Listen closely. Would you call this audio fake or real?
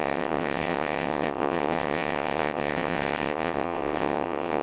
fake